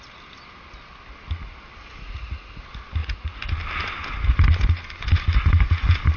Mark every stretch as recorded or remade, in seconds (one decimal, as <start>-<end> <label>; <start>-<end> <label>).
0.0-2.0 recorded; 2.0-2.6 remade; 2.6-3.0 recorded; 3.0-3.5 remade; 3.5-6.2 recorded